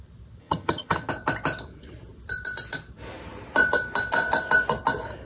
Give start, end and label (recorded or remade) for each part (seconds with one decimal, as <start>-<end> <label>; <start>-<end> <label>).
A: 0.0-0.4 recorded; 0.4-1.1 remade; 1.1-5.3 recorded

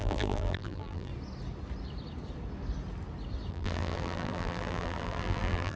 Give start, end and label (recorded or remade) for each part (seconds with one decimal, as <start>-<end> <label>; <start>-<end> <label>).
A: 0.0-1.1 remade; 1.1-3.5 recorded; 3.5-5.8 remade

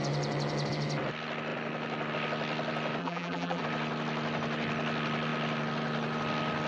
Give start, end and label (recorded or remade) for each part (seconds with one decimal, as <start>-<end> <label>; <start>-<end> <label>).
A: 0.0-3.0 recorded; 3.0-3.6 remade; 3.6-6.7 recorded

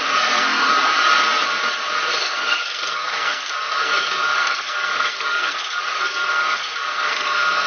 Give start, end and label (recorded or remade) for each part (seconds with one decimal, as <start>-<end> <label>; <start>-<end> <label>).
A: 0.0-0.7 remade; 0.7-2.2 recorded; 2.2-7.7 remade